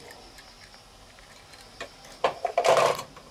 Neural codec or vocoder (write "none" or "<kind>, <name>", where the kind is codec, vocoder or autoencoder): none